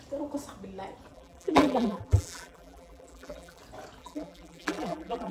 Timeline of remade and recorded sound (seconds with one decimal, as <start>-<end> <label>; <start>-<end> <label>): 0.0-1.1 recorded; 1.1-3.6 remade; 3.6-4.0 recorded; 4.0-5.3 remade